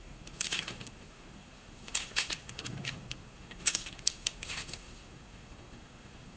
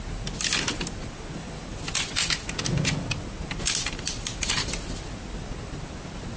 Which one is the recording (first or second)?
second